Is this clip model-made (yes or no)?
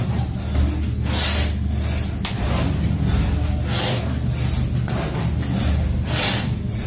no